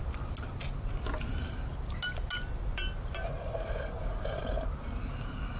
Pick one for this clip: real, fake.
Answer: real